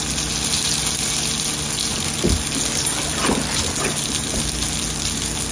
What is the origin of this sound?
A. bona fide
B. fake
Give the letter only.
A